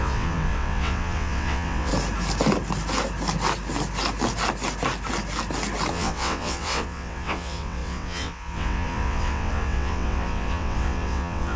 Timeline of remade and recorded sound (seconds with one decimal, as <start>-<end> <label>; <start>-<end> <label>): 0.0-1.9 remade; 1.9-5.9 recorded; 5.9-11.6 remade

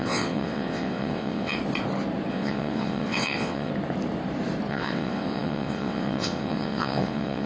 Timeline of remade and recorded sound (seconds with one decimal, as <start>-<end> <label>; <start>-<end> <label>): 0.0-1.6 remade; 1.6-2.3 recorded; 2.3-3.7 remade; 3.7-4.7 recorded; 4.7-7.5 remade

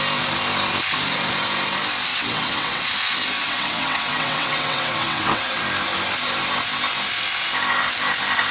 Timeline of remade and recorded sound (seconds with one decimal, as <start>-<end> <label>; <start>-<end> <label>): 0.0-2.1 recorded; 2.1-2.9 remade; 2.9-3.4 recorded; 3.4-5.6 remade; 5.6-8.5 recorded